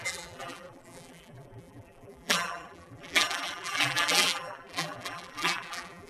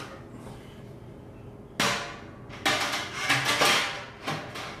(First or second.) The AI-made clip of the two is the first